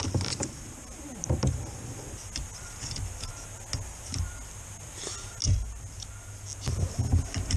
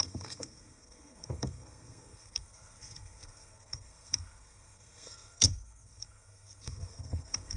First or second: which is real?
first